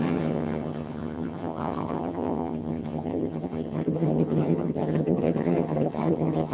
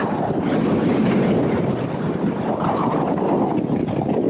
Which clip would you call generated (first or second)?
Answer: first